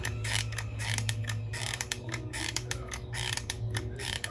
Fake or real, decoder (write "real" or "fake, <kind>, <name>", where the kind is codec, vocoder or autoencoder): fake, codec, DAC